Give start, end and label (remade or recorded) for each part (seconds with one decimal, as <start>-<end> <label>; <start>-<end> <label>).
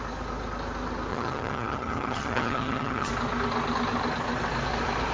0.0-1.1 recorded; 1.1-3.1 remade; 3.1-5.1 recorded